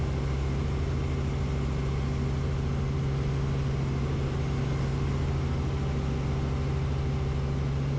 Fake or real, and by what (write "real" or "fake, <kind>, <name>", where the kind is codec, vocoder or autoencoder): real